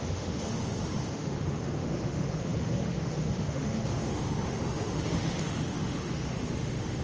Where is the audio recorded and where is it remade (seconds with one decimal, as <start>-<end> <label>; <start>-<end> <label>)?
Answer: 0.0-7.0 remade